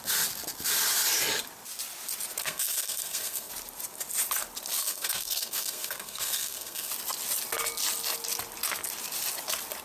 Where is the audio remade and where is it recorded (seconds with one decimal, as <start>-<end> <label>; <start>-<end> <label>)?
0.0-2.4 recorded; 2.4-3.5 remade; 3.5-4.8 recorded; 4.8-6.9 remade; 6.9-9.8 recorded